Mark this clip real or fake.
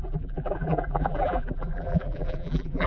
fake